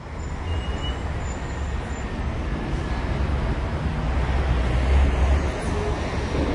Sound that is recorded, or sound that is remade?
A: recorded